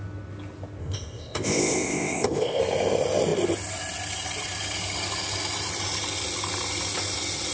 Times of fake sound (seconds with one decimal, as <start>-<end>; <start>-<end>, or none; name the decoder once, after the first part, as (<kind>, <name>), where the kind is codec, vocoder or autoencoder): 0.8-2.6 (codec, ZipCodec)

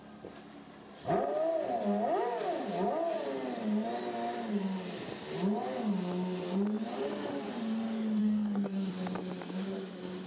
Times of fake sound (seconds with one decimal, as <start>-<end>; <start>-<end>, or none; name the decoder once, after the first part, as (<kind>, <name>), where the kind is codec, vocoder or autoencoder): 8.2-8.9 (codec, DAC)